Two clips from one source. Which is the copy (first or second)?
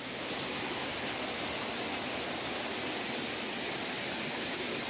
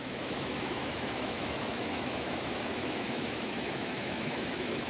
second